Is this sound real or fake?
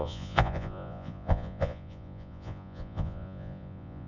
fake